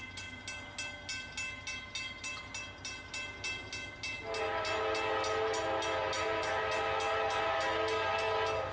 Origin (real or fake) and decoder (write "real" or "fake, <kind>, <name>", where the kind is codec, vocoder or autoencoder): real